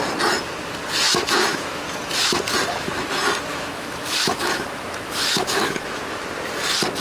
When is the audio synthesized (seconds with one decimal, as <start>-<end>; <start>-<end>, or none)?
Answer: 1.1-1.8; 3.5-6.0